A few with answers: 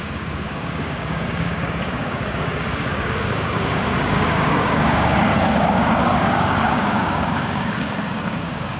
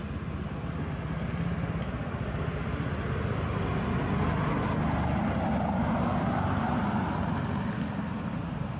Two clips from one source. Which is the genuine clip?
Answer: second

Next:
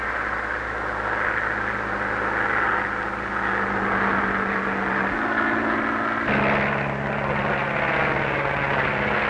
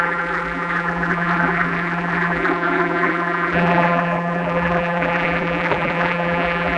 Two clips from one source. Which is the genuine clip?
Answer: first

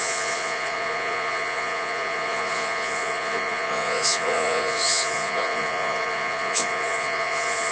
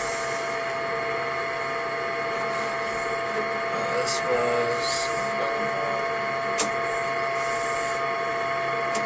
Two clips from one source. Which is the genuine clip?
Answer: second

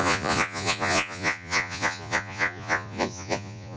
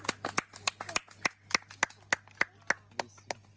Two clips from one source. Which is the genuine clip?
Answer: second